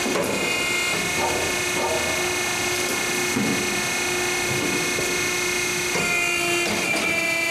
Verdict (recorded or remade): recorded